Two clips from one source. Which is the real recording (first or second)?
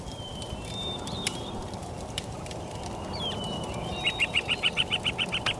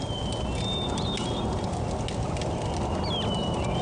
second